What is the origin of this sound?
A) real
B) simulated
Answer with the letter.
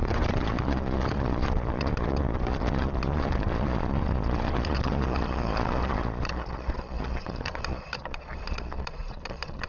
B